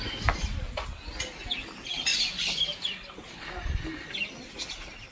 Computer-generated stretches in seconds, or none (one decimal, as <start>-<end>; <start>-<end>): 2.1-2.6